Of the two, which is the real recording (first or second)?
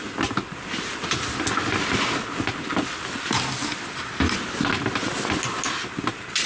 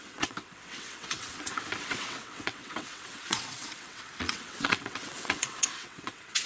first